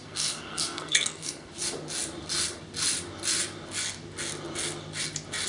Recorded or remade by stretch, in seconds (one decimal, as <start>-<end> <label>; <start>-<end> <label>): 0.0-1.5 remade; 1.5-5.5 recorded